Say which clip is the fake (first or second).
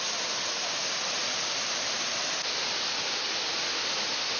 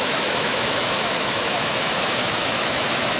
second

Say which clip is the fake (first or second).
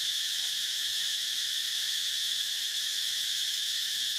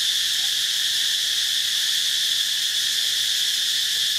first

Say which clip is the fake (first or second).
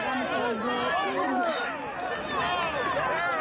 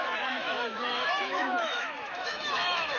second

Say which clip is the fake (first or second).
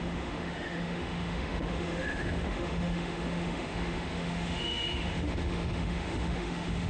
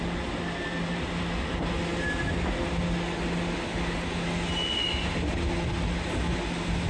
first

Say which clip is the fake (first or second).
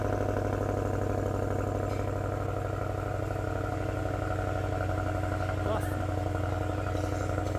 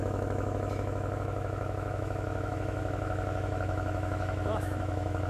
second